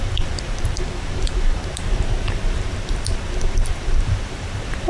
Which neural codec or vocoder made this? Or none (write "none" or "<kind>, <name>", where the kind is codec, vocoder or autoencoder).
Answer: vocoder, BigVGAN v2